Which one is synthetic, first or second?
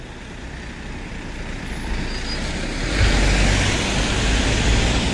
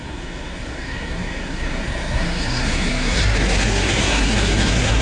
second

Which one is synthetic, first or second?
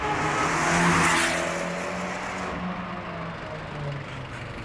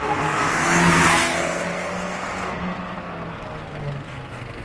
second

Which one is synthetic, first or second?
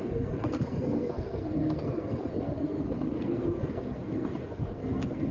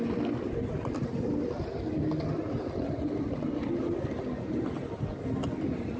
first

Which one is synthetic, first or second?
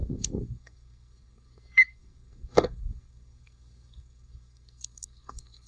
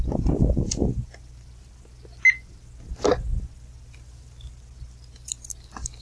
first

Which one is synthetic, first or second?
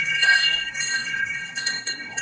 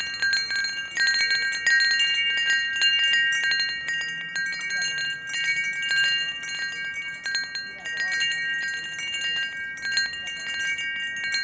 first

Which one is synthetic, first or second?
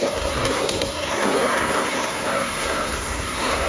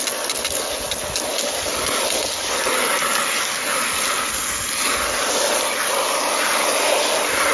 first